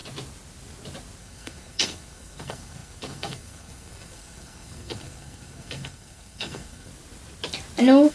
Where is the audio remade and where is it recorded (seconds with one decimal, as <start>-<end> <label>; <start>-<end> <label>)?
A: 0.0-1.2 recorded; 1.2-6.9 remade; 6.9-8.1 recorded

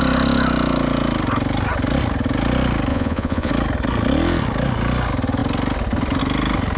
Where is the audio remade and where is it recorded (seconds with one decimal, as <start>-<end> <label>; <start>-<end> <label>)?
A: 0.0-2.9 recorded; 2.9-3.5 remade; 3.5-6.8 recorded

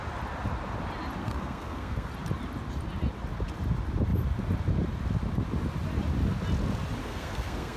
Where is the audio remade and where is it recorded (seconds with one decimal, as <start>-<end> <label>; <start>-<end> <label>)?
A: 0.0-1.2 recorded; 1.2-2.1 remade; 2.1-7.0 recorded; 7.0-7.8 remade

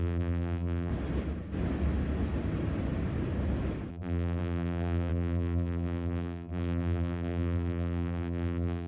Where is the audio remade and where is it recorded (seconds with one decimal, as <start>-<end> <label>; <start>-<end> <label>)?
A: 0.0-0.9 remade; 0.9-3.9 recorded; 3.9-8.9 remade

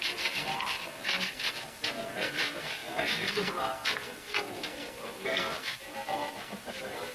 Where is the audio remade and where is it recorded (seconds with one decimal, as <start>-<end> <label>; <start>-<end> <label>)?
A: 0.0-7.1 remade

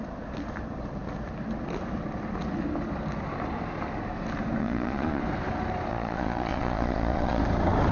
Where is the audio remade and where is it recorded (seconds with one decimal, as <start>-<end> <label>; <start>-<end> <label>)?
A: 0.0-4.6 recorded; 4.6-5.2 remade; 5.2-5.9 recorded; 5.9-7.4 remade; 7.4-7.9 recorded

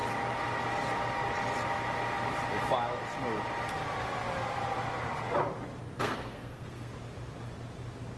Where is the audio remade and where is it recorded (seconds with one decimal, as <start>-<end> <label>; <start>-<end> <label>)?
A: 0.0-6.0 recorded; 6.0-6.9 remade; 6.9-8.2 recorded

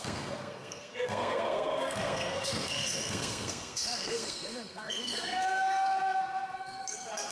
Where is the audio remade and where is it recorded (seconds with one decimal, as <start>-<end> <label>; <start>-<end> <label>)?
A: 0.0-7.3 remade